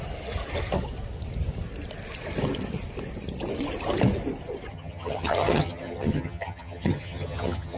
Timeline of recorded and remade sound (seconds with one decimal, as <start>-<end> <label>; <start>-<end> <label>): 0.0-4.7 recorded; 4.7-7.8 remade